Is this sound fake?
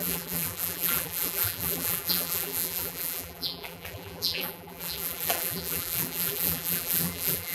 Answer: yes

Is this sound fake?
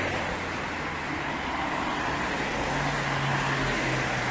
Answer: no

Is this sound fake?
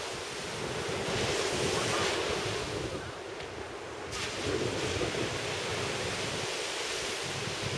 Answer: no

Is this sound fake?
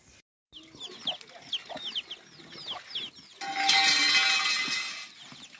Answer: no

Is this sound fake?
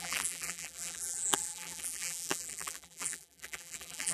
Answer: yes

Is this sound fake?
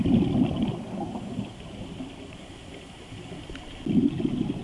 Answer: no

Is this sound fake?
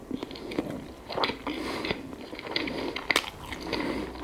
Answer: no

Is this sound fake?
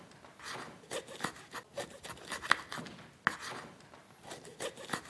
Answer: no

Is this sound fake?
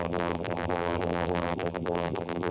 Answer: yes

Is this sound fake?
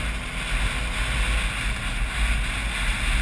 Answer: no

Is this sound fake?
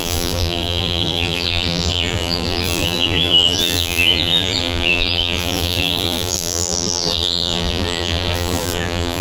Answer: yes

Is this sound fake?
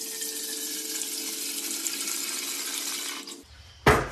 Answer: no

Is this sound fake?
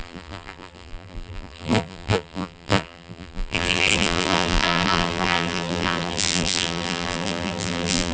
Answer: yes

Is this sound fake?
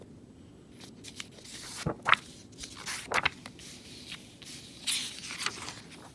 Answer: no